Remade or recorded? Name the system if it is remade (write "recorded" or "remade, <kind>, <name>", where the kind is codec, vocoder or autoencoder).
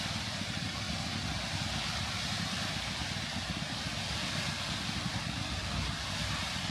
recorded